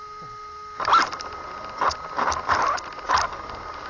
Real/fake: real